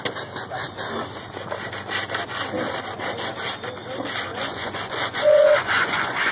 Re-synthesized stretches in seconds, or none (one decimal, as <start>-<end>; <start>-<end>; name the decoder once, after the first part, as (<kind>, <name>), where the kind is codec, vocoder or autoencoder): 4.3-6.3 (vocoder, Vocos)